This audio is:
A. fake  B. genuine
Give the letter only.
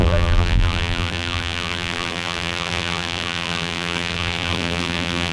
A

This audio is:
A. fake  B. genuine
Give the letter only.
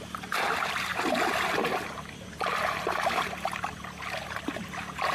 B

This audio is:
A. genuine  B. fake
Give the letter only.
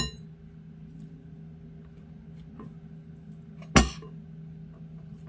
A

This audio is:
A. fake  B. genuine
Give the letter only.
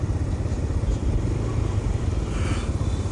B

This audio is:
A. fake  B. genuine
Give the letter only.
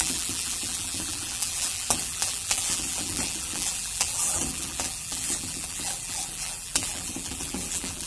A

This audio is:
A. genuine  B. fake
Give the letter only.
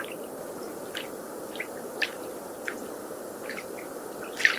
B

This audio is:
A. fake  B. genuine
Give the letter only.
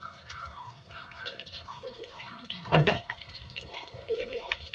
A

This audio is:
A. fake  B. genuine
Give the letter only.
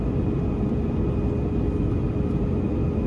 B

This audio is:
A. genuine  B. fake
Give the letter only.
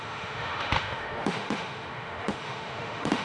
B